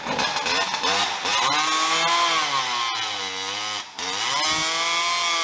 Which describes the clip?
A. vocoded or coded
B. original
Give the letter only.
B